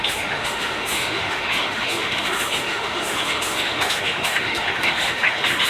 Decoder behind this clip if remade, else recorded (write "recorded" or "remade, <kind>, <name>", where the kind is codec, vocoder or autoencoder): remade, autoencoder, DAC-VAE